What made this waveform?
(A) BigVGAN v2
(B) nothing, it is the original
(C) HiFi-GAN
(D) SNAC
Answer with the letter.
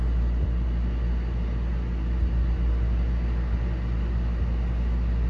B